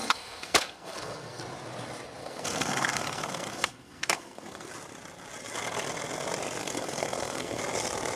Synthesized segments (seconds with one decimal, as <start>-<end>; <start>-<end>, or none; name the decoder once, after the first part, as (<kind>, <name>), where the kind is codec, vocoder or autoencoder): 0.0-1.4 (codec, SNAC); 2.2-4.7; 6.6-7.6